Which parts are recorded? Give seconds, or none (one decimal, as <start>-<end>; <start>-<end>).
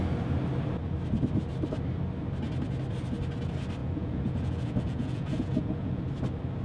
0.0-3.8; 6.0-6.6